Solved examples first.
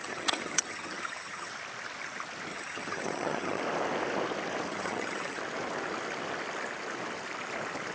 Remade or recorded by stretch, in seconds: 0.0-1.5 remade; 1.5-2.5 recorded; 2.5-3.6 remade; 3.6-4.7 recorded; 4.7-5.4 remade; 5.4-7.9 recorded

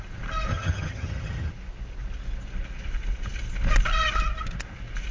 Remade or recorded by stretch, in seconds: 0.0-0.5 recorded; 0.5-1.5 remade; 1.5-5.1 recorded

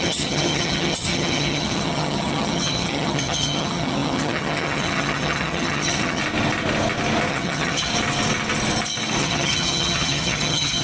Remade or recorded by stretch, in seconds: 0.0-6.2 remade; 6.2-7.3 recorded; 7.3-7.9 remade; 7.9-9.2 recorded; 9.2-10.8 remade

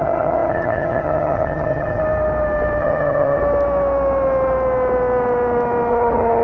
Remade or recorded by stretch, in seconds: 0.0-2.0 remade; 2.0-2.8 recorded; 2.8-3.4 remade; 3.4-5.9 recorded; 5.9-6.4 remade

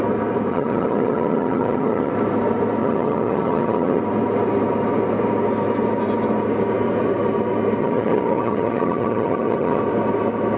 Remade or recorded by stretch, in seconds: 0.0-0.5 recorded; 0.5-2.1 remade; 2.1-2.8 recorded; 2.8-4.0 remade; 4.0-7.8 recorded; 7.8-9.8 remade; 9.8-10.6 recorded